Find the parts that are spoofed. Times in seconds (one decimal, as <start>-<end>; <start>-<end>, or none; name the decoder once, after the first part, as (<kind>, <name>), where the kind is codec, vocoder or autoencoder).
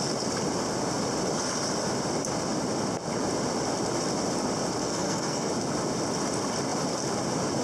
4.8-5.5 (codec, SNAC)